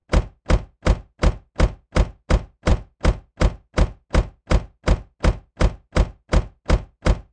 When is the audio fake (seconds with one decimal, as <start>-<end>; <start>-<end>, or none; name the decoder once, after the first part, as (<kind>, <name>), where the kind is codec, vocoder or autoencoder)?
none